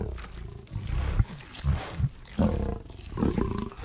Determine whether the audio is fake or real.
real